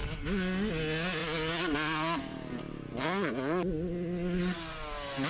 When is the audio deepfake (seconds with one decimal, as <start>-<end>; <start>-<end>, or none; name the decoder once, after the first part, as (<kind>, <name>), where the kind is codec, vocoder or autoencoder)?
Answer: none